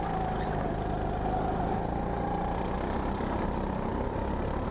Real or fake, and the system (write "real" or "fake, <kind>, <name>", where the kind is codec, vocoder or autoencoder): real